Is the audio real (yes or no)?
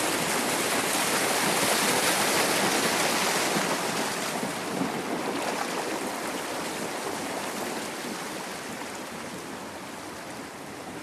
yes